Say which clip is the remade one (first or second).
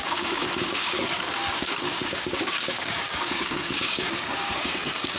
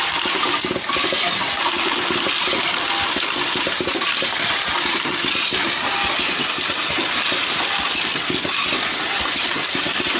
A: first